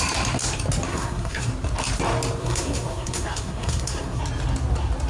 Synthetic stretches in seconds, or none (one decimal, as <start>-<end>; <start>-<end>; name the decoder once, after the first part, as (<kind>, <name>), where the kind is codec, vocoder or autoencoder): 0.9-1.5 (codec, SNAC); 2.4-4.2